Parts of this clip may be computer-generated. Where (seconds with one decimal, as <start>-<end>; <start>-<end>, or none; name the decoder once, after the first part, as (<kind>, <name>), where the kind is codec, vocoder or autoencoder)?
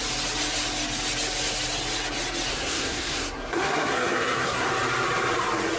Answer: 2.5-4.7 (codec, SNAC)